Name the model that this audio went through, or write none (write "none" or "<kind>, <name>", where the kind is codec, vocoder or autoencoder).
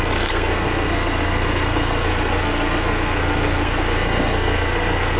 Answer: codec, SNAC